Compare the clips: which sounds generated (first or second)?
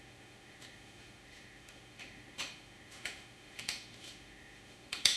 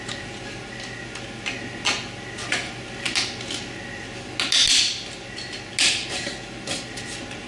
first